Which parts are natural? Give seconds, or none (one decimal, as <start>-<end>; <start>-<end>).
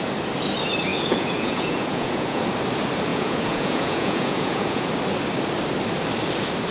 0.0-0.9; 2.4-3.1; 4.9-6.7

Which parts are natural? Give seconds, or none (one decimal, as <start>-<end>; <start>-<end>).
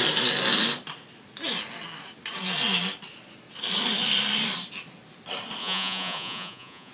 0.0-5.6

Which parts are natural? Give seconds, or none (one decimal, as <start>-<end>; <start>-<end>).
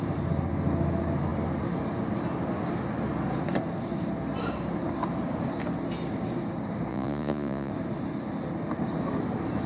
0.0-6.9; 7.7-9.7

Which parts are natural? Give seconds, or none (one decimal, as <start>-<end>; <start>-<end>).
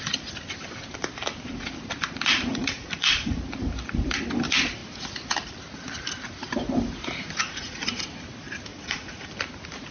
0.0-2.5; 3.4-7.4; 8.0-8.7; 9.3-9.9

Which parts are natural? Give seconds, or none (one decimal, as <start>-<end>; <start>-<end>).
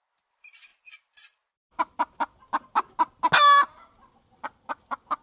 0.0-5.2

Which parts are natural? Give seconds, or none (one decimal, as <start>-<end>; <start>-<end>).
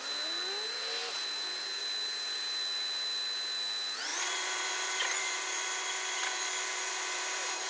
0.0-4.1; 7.2-7.7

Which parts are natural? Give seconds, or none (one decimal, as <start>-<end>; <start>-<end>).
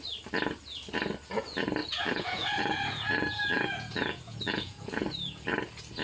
0.0-1.8; 4.9-6.0